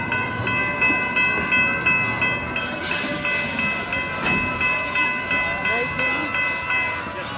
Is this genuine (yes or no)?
yes